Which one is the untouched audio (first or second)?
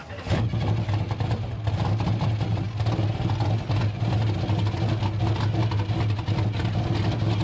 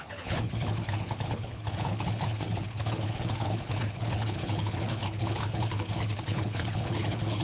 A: first